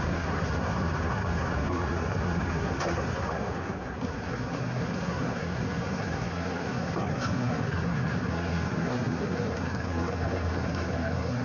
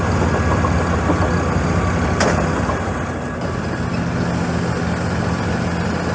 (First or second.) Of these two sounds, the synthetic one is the first